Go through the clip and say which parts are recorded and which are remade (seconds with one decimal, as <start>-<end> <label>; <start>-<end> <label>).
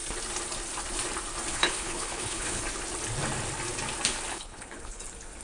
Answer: 0.0-1.5 recorded; 1.5-2.6 remade; 2.6-4.3 recorded; 4.3-5.0 remade; 5.0-5.4 recorded